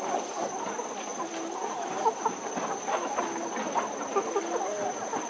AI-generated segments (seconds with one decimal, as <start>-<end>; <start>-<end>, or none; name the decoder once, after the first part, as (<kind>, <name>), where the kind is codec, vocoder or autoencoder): none